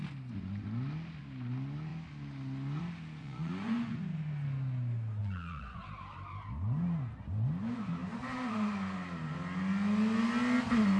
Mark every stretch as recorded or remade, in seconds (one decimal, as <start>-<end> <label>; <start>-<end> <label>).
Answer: 0.0-3.2 recorded; 3.2-4.0 remade; 4.0-5.2 recorded; 5.2-5.8 remade; 5.8-11.0 recorded

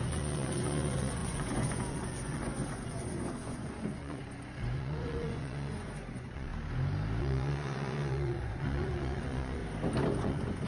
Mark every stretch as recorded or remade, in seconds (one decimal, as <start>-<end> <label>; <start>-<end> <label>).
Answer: 0.0-6.5 remade; 6.5-7.2 recorded; 7.2-9.6 remade; 9.6-10.2 recorded; 10.2-10.7 remade

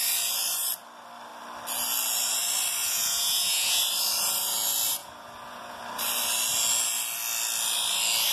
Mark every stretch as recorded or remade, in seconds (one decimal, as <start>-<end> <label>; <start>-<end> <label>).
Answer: 0.0-2.8 recorded; 2.8-3.8 remade; 3.8-5.0 recorded; 5.0-5.8 remade; 5.8-8.3 recorded

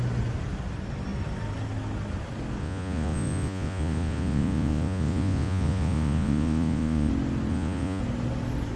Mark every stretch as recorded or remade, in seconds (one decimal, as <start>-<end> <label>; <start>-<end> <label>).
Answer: 0.0-2.6 recorded; 2.6-7.1 remade; 7.1-7.5 recorded; 7.5-8.0 remade; 8.0-8.8 recorded

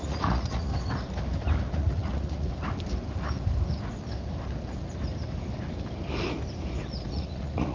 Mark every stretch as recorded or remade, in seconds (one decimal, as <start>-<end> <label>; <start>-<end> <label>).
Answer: 0.0-0.7 remade; 0.7-1.7 recorded; 1.7-2.5 remade; 2.5-7.1 recorded; 7.1-7.7 remade

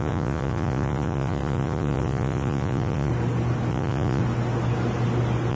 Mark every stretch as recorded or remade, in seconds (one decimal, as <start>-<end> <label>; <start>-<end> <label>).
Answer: 0.0-3.1 remade; 3.1-3.7 recorded; 3.7-4.2 remade; 4.2-5.5 recorded

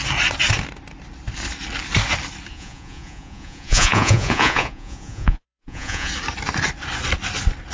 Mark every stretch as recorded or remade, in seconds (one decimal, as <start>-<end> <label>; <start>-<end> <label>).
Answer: 0.0-2.5 recorded; 2.5-6.1 remade; 6.1-7.7 recorded